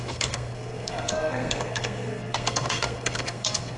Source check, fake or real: fake